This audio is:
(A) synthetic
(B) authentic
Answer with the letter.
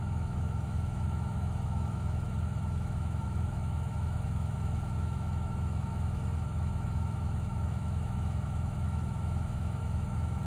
A